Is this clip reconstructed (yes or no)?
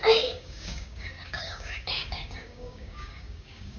yes